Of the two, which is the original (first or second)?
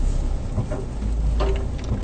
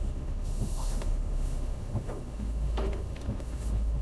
first